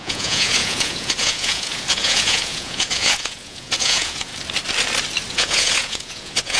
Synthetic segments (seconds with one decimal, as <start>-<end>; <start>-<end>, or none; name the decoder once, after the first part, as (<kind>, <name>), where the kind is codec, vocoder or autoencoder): 0.0-4.3 (vocoder, Vocos); 5.3-6.6